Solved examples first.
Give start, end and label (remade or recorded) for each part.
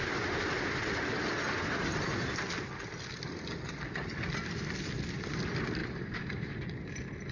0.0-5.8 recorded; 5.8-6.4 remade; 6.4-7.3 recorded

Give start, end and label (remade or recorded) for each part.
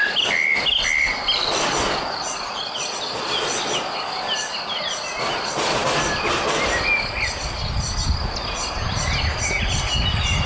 0.0-10.5 recorded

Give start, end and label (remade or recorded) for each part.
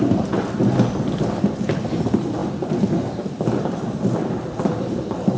0.0-5.4 recorded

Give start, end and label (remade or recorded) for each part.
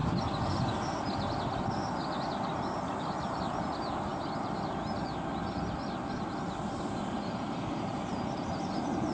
0.0-9.1 recorded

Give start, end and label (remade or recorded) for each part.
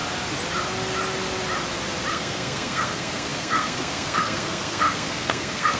0.0-2.1 recorded; 2.1-5.8 remade